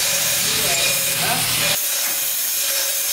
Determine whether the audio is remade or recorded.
recorded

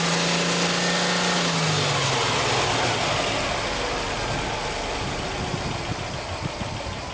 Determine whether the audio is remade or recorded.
recorded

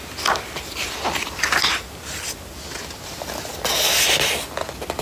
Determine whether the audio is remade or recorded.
recorded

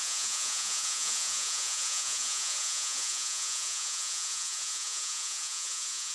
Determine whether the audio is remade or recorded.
remade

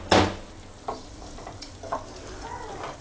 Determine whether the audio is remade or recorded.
recorded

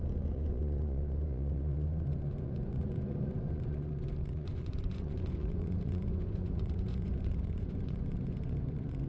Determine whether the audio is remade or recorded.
remade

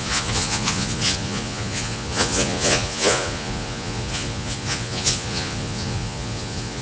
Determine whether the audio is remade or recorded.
remade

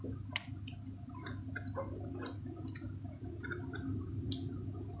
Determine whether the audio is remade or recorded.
recorded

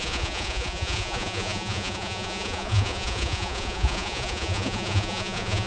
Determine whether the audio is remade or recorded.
remade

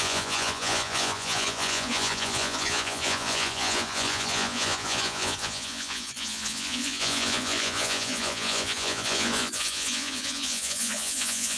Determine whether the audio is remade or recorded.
remade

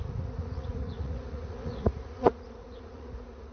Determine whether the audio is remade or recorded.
remade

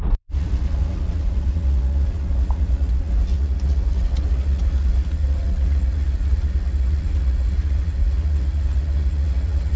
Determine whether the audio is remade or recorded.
remade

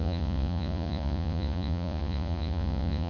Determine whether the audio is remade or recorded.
remade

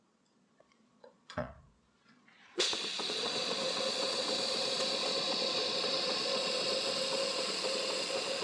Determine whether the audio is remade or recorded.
remade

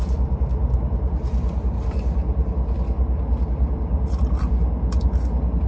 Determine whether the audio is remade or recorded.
recorded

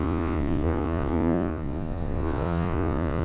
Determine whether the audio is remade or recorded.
remade